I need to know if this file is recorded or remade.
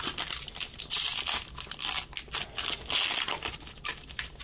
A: recorded